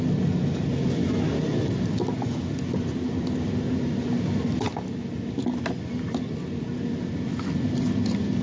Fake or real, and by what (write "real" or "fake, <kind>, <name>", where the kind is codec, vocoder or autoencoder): real